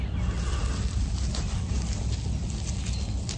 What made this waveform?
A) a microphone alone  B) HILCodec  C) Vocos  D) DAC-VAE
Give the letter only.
A